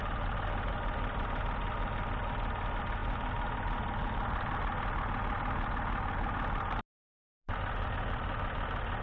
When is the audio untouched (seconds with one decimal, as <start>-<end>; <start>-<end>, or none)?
0.0-9.0